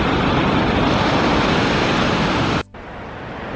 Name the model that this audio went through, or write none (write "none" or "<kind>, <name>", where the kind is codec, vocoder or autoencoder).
none